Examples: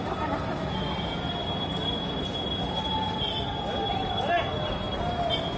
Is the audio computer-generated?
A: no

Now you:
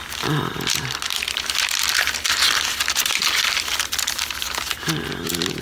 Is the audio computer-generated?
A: no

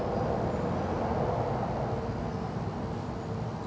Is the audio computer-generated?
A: no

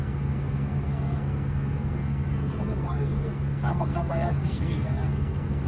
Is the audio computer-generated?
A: yes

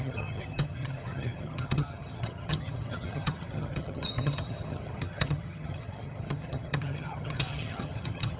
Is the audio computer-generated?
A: yes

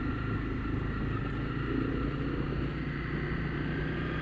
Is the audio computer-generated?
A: no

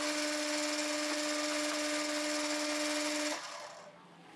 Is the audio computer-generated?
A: no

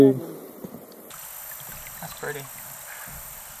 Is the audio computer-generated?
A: no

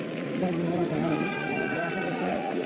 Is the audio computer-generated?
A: yes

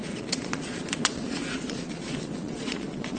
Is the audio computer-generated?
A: yes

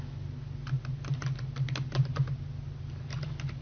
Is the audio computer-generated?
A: no